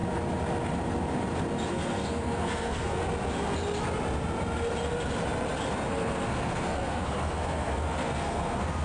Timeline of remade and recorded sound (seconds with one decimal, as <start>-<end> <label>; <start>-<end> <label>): 0.0-1.7 recorded; 1.7-3.0 remade; 3.0-5.9 recorded; 5.9-8.8 remade